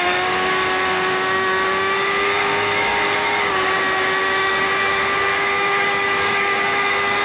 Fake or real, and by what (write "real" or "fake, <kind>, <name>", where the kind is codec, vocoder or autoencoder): fake, codec, DAC